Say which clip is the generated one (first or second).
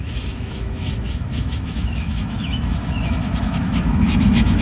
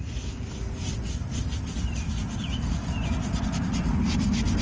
first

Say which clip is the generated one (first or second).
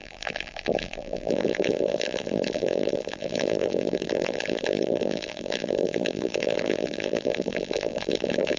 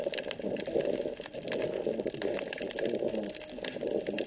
first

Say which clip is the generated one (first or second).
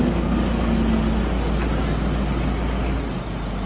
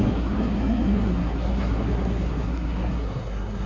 second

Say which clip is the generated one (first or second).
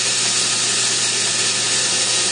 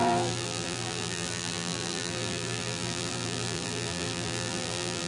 second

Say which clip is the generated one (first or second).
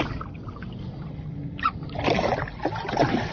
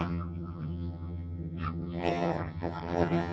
second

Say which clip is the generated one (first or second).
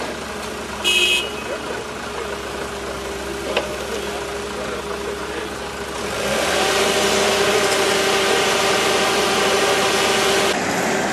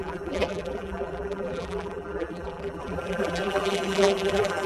second